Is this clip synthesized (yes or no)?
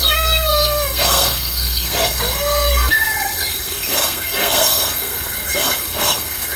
yes